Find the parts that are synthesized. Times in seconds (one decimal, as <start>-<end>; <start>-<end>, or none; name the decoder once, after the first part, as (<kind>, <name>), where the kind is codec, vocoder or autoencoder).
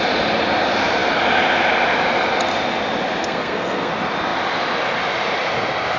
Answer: 3.2-3.9 (codec, SNAC)